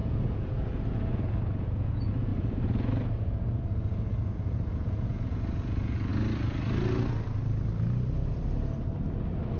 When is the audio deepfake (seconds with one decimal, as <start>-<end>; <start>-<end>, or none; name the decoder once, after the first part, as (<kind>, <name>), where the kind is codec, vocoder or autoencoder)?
0.0-6.1 (vocoder, Vocos)